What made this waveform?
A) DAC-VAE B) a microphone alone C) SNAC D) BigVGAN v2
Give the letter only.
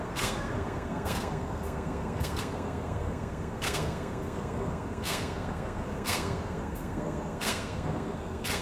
C